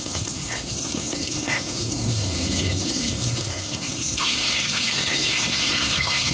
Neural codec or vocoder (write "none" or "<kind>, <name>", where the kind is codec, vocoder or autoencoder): codec, SNAC